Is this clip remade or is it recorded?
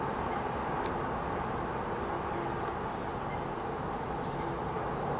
recorded